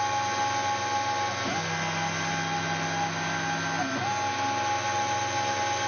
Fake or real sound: real